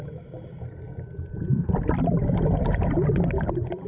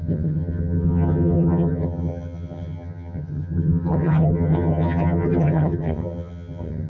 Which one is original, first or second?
first